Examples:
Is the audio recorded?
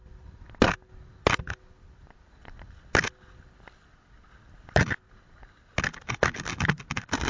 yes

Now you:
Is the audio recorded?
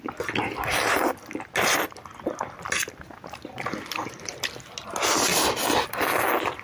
yes